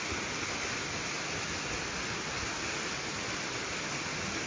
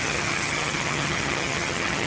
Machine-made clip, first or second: second